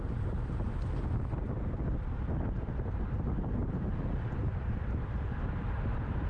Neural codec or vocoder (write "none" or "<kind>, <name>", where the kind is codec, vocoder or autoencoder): none